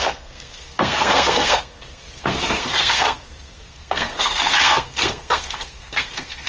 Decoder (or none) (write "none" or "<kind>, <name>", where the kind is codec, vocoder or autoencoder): codec, SNAC